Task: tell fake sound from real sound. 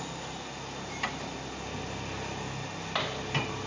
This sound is real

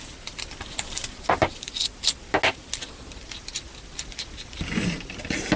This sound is real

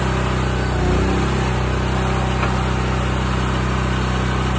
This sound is real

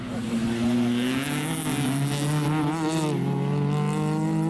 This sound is real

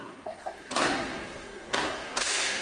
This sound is fake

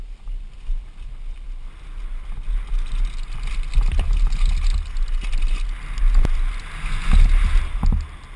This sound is real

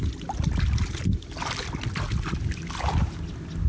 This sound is real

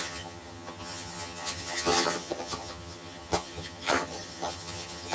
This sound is fake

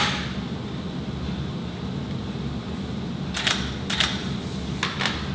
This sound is real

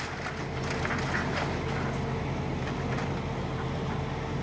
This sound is real